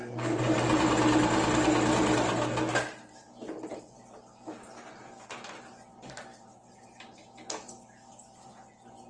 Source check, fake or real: real